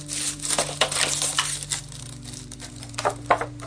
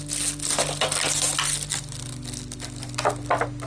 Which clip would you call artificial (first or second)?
first